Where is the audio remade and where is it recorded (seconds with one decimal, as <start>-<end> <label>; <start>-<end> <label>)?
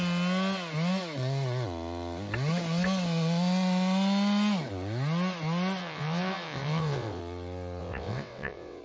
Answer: 0.0-5.8 recorded; 5.8-7.2 remade; 7.2-7.8 recorded; 7.8-8.8 remade